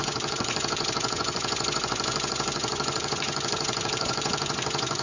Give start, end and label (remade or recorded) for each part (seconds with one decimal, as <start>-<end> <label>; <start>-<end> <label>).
0.0-5.0 remade

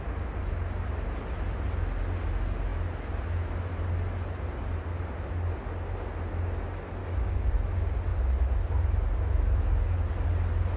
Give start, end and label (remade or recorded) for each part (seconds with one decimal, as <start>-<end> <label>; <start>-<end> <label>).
0.0-7.0 recorded; 7.0-7.5 remade; 7.5-10.8 recorded

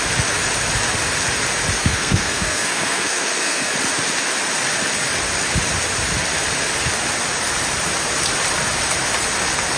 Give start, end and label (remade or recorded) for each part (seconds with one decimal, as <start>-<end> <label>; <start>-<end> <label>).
0.0-1.8 recorded; 1.8-3.7 remade; 3.7-9.8 recorded

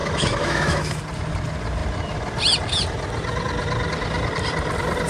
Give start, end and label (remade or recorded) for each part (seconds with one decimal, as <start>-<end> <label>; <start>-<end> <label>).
0.0-1.0 remade; 1.0-5.1 recorded

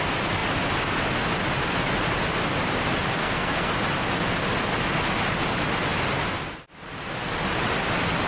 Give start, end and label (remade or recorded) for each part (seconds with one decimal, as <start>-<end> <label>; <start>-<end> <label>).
0.0-3.2 recorded; 3.2-3.7 remade; 3.7-8.3 recorded